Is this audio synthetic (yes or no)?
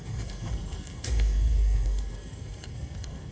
yes